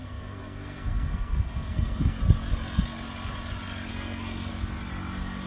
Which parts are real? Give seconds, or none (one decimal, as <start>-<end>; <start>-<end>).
2.2-3.9; 4.5-5.5